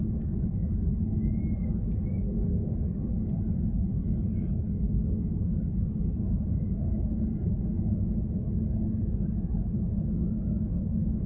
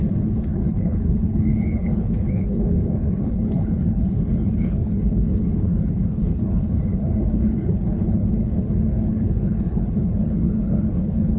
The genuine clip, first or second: first